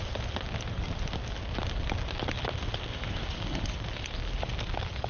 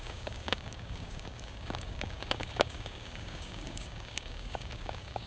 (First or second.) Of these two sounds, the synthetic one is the second